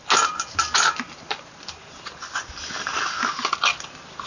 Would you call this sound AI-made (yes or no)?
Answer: no